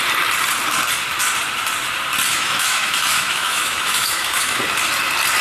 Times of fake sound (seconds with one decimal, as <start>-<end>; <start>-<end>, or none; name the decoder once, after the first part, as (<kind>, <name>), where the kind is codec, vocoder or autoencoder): 2.3-4.6 (autoencoder, DAC-VAE)